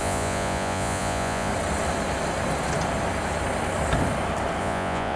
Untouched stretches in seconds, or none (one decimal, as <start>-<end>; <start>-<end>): 1.5-4.6